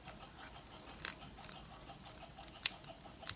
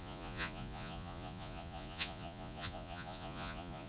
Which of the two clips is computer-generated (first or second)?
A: second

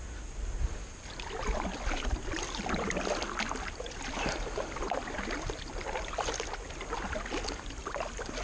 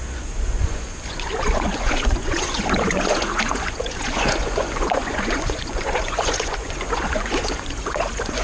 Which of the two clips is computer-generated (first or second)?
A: second